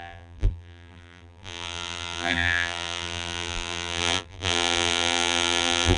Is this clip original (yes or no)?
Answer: no